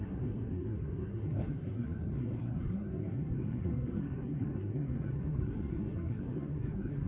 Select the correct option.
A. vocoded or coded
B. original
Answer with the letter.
A